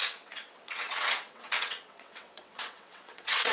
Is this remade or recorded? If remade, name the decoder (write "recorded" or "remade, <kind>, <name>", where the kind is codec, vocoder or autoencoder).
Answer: remade, vocoder, WaveNeXt